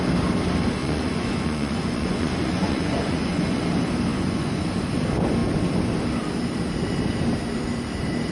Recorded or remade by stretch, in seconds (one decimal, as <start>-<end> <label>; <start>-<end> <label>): 0.0-0.8 recorded; 0.8-3.6 remade; 3.6-4.1 recorded; 4.1-4.6 remade; 4.6-8.3 recorded